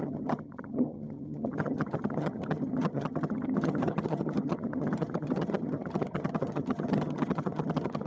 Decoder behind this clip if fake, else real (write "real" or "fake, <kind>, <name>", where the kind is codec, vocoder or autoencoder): fake, vocoder, HiFi-GAN